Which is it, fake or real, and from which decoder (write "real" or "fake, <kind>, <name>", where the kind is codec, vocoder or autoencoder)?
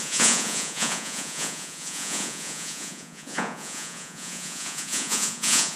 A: fake, vocoder, Vocos